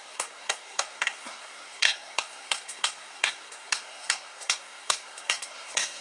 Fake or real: fake